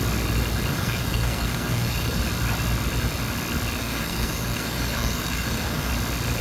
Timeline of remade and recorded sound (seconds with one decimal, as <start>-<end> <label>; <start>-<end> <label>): 0.0-0.7 recorded; 0.7-2.2 remade; 2.2-3.8 recorded; 3.8-5.9 remade; 5.9-6.4 recorded

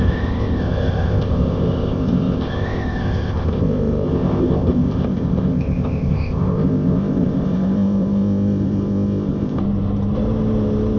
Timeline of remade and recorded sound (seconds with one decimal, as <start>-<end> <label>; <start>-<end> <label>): 0.0-9.6 remade; 9.6-11.0 recorded

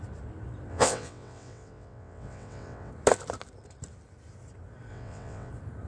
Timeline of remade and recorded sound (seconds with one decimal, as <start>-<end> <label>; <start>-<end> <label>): 0.0-0.7 recorded; 0.7-2.9 remade; 2.9-4.9 recorded; 4.9-5.5 remade; 5.5-5.9 recorded

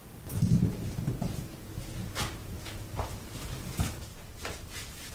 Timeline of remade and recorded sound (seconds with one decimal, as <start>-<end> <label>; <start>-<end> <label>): 0.0-1.8 remade; 1.8-2.4 recorded; 2.4-3.3 remade; 3.3-4.1 recorded; 4.1-5.1 remade

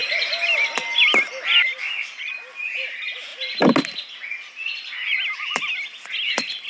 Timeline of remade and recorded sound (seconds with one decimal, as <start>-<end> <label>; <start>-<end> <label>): 0.0-6.7 recorded